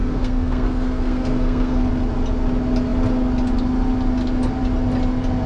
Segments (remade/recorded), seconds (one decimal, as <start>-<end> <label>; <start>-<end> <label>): 0.0-1.9 remade; 1.9-5.5 recorded